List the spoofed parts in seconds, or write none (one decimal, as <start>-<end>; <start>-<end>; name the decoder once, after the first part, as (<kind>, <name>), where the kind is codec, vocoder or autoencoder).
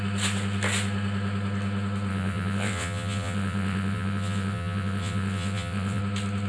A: 2.1-6.0 (vocoder, WaveNeXt)